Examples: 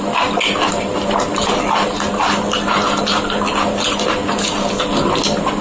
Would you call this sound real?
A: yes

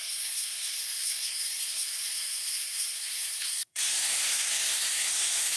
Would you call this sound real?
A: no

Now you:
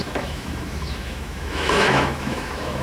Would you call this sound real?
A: no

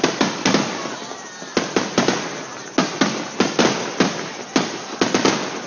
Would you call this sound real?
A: yes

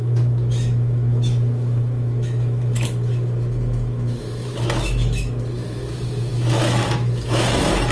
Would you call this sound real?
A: no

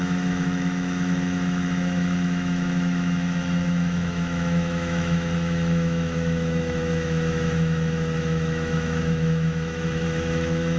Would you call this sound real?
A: no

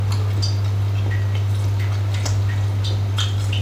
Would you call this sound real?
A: yes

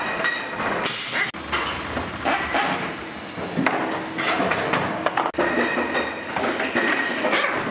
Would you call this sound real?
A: yes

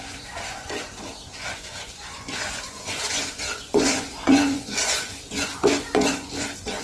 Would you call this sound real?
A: no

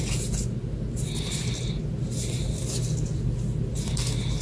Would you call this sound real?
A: yes